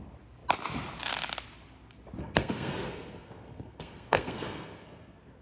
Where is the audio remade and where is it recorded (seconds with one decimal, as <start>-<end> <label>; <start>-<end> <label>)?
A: 0.0-2.2 recorded; 2.2-5.4 remade